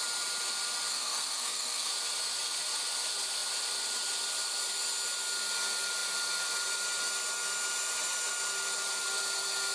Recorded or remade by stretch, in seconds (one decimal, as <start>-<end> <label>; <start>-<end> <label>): 0.0-0.9 recorded; 0.9-1.9 remade; 1.9-9.7 recorded